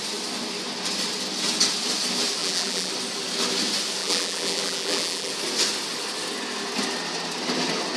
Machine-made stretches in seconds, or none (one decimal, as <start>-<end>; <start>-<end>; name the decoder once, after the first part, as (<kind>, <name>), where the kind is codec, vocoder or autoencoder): 2.4-2.9 (vocoder, BigVGAN v2); 4.0-5.3